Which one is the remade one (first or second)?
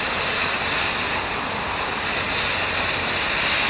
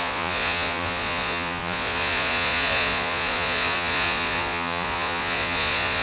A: second